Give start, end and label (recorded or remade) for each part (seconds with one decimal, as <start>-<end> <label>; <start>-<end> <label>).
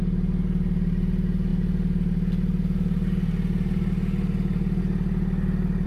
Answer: 0.0-5.9 recorded